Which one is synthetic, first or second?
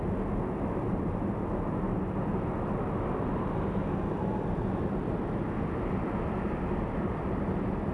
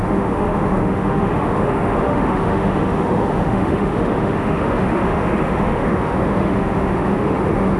second